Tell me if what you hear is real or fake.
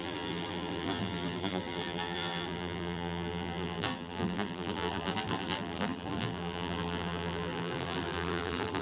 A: fake